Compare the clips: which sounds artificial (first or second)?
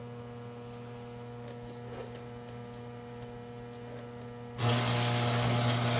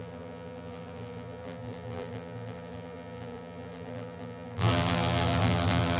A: second